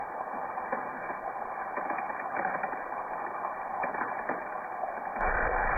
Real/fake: fake